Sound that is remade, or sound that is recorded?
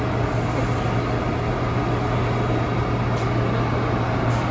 recorded